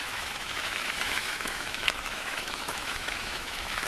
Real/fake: fake